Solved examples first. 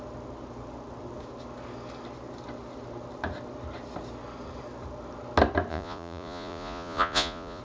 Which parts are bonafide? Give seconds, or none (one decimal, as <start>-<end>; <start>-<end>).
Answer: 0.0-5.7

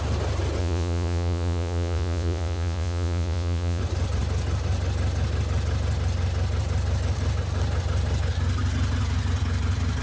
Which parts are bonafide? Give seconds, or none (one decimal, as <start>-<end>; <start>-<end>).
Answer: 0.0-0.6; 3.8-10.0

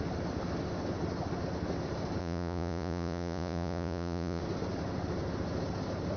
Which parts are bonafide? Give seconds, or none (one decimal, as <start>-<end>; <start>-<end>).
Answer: 0.0-2.2; 4.4-6.2

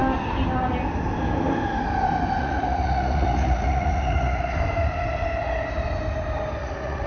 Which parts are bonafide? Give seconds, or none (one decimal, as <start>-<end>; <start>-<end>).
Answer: 0.0-2.4; 4.5-6.6

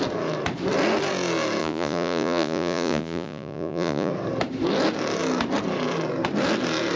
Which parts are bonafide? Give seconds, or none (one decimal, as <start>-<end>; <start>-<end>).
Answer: 0.0-1.6; 4.1-7.0